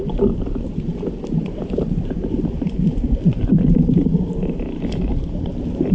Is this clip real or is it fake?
fake